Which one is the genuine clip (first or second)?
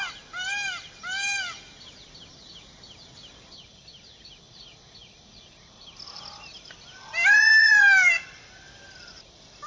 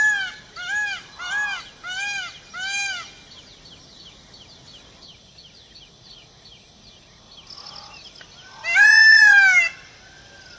second